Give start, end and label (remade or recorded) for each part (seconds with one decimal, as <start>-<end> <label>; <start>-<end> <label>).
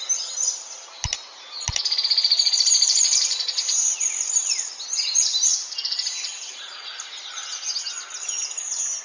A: 0.0-9.0 recorded